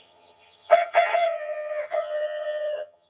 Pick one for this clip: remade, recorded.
remade